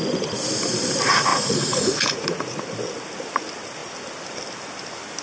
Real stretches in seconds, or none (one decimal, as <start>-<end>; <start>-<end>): 0.0-1.3; 2.6-5.2